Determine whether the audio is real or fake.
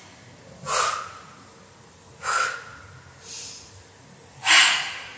real